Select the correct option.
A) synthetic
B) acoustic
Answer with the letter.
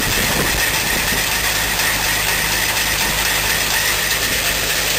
B